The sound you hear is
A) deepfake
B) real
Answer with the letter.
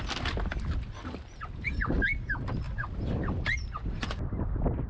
B